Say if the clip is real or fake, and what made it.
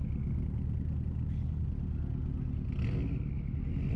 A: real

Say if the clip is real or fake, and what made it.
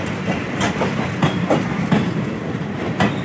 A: real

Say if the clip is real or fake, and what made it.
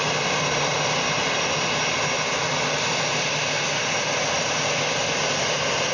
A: real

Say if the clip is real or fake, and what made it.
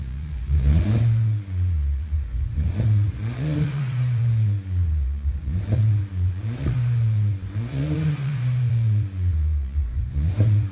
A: fake, vocoder, Vocos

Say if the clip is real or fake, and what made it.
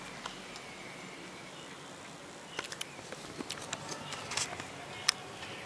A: real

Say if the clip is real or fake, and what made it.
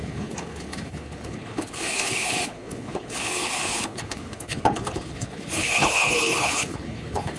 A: fake, codec, HILCodec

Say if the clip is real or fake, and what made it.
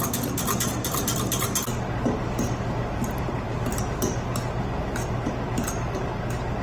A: real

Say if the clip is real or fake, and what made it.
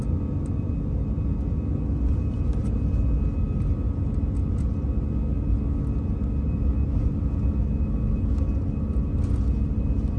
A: real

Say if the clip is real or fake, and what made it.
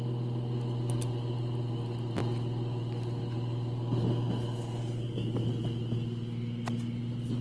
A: real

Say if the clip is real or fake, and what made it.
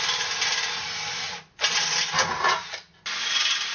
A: real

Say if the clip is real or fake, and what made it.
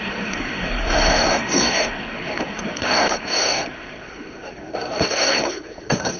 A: fake, codec, SNAC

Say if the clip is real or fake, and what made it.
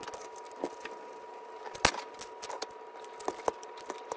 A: real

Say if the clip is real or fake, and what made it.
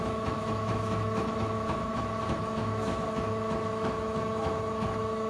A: fake, autoencoder, DAC-VAE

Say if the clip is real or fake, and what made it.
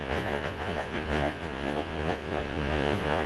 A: fake, vocoder, Vocos